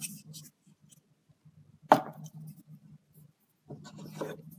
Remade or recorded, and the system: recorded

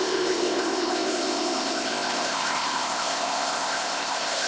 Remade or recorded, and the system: remade, codec, ZipCodec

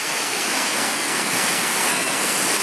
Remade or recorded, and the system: remade, codec, SNAC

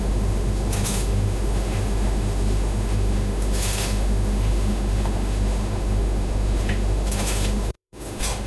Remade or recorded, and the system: remade, autoencoder, DAC-VAE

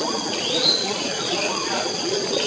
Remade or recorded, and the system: remade, vocoder, Vocos